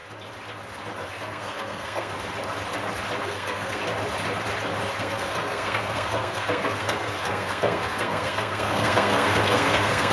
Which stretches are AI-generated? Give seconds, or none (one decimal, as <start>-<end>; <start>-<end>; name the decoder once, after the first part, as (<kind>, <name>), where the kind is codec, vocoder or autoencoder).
1.1-2.1 (codec, SNAC); 3.2-3.8; 5.0-10.1